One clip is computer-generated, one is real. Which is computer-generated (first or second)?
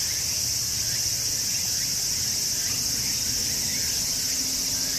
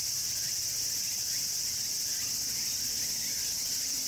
second